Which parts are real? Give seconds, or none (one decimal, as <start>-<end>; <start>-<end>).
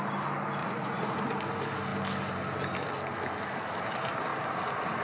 0.0-0.6; 1.2-5.0